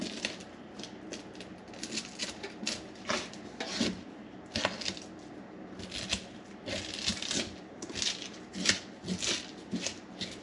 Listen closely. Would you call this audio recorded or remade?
recorded